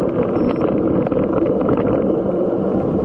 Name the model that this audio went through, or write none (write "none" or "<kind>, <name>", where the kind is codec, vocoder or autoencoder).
none